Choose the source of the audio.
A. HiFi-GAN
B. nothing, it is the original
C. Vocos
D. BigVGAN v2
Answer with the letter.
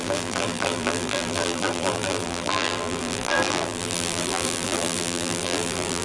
D